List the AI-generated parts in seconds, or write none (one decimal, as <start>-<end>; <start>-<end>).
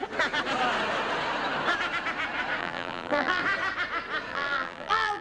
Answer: 2.6-3.4; 4.3-5.2